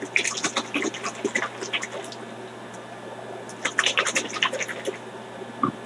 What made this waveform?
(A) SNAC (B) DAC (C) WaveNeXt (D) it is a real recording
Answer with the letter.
D